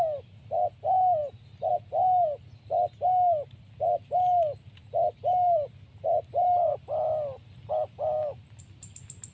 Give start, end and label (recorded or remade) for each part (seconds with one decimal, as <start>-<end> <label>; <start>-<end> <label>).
0.0-9.3 recorded